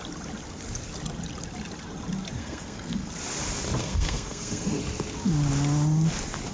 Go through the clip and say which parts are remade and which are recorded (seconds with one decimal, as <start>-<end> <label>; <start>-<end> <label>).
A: 0.0-2.4 recorded; 2.4-3.1 remade; 3.1-3.8 recorded; 3.8-4.8 remade; 4.8-6.5 recorded